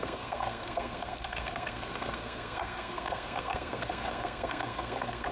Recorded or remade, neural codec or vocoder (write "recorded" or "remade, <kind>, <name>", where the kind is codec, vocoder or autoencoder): remade, codec, SNAC